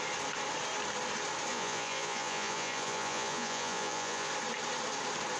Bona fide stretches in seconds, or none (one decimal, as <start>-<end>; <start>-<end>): 0.0-1.5; 4.3-5.4